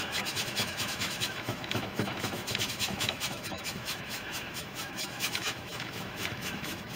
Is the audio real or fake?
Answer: fake